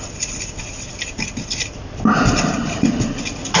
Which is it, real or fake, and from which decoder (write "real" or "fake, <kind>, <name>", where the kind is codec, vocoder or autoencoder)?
real